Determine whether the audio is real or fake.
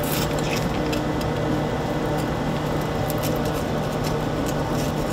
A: real